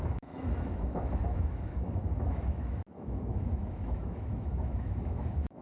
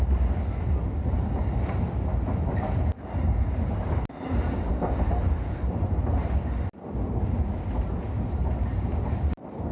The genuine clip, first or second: second